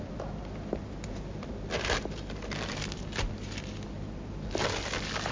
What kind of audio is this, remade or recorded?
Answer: recorded